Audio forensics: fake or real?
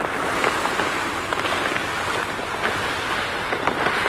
fake